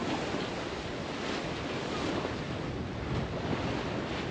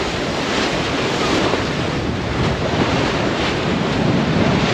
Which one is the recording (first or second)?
first